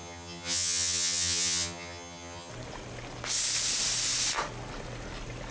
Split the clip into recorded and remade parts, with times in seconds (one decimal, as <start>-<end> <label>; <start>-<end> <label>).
0.0-2.5 remade; 2.5-5.5 recorded